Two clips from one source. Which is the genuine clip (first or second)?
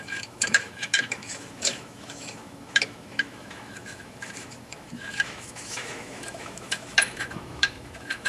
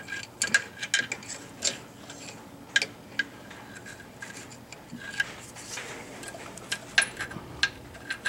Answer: second